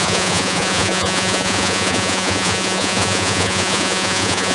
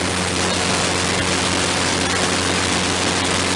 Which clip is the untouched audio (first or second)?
second